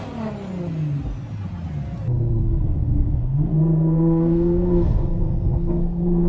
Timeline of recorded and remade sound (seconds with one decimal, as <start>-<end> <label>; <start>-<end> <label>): 0.0-2.4 recorded; 2.4-6.3 remade